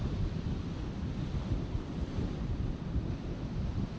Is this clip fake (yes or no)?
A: no